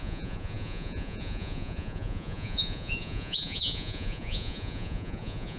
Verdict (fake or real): fake